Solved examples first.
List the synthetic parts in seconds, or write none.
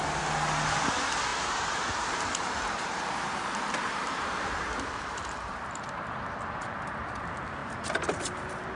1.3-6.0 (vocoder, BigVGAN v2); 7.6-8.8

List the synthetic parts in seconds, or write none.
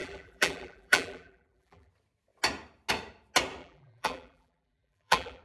0.0-1.9 (vocoder, BigVGAN v2); 3.6-5.4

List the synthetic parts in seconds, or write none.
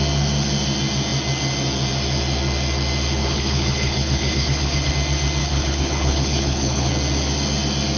3.2-4.9 (codec, HILCodec); 5.4-6.9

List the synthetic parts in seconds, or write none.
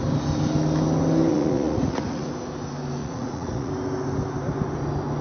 1.3-2.3 (vocoder, Vocos); 3.0-3.7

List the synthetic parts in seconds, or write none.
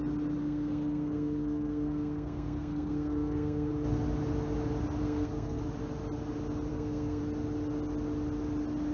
0.4-3.7 (codec, SNAC); 5.0-5.6; 6.7-7.2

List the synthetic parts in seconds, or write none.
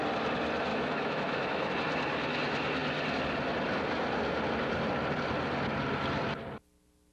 0.7-1.7 (autoencoder, DAC-VAE)